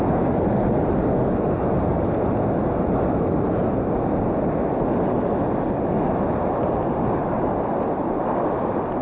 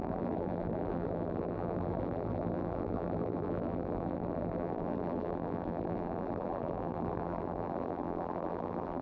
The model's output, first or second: second